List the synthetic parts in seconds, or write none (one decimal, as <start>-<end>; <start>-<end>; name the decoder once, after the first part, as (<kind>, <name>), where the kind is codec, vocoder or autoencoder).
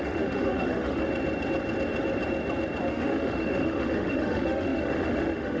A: 0.0-1.0 (autoencoder, DAC-VAE); 2.9-5.6